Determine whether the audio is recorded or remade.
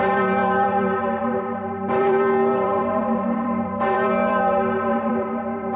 remade